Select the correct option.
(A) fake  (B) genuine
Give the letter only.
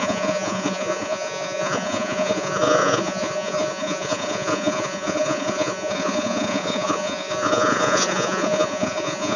A